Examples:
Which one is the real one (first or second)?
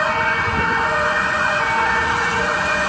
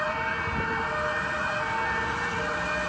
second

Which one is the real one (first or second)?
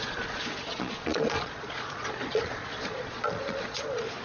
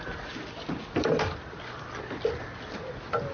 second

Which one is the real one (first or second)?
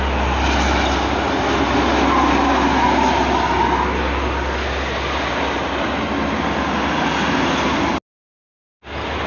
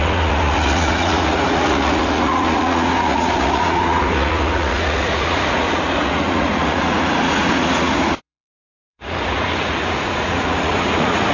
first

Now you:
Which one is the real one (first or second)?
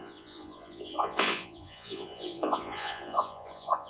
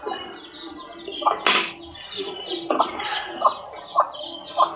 second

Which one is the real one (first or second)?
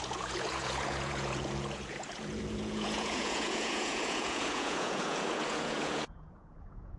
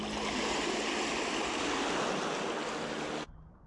second